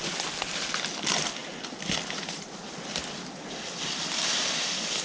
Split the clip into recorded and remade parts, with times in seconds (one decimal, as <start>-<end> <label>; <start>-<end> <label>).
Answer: 0.0-5.0 recorded